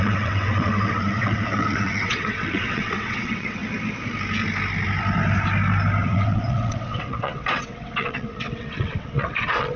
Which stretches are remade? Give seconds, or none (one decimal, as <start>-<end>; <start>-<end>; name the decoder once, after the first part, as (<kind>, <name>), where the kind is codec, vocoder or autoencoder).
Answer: 0.0-3.6 (vocoder, WaveNeXt); 6.0-9.8